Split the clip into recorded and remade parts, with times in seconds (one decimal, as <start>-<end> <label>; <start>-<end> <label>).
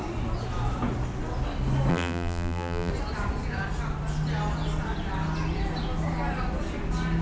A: 0.0-1.9 recorded; 1.9-2.9 remade; 2.9-7.2 recorded